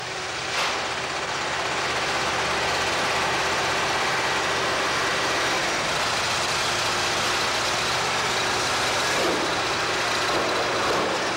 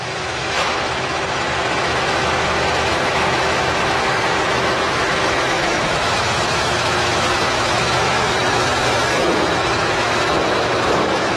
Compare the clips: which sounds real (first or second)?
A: first